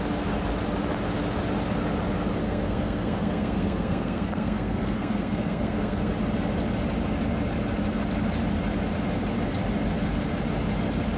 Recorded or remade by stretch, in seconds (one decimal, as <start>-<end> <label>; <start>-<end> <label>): 0.0-2.4 recorded; 2.4-6.1 remade; 6.1-11.2 recorded